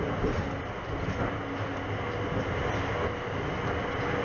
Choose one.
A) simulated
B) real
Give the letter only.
B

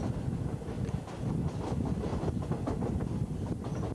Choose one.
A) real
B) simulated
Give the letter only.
A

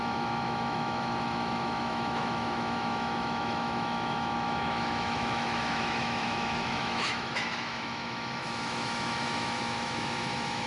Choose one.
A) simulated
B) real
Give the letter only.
A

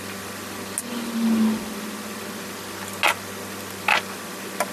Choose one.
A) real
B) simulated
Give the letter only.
A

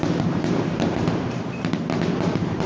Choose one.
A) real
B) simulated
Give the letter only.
B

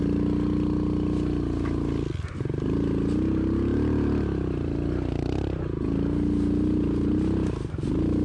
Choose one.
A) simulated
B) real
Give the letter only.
B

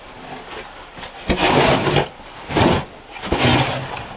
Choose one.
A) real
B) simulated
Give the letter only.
A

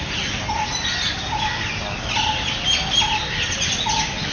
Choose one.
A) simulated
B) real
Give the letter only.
B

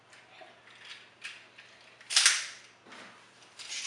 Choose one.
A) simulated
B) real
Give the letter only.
B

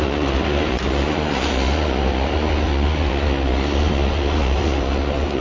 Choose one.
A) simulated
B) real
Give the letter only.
A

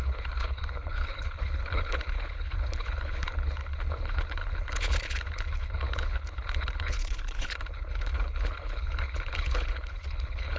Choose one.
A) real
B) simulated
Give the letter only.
B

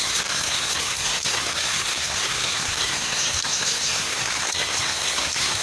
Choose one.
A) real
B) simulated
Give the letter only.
B